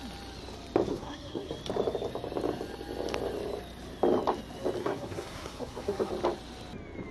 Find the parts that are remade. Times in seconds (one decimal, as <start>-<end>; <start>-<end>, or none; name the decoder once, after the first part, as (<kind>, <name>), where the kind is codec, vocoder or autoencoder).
0.9-1.5 (codec, SNAC); 4.8-6.1